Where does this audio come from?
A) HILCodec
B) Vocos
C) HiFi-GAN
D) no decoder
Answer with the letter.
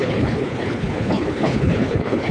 A